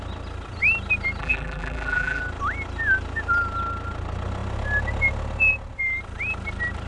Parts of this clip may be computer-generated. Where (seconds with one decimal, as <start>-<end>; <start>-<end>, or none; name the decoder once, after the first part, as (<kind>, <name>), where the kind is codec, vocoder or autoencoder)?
1.2-2.2 (vocoder, BigVGAN v2)